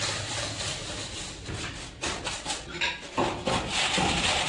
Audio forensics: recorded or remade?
recorded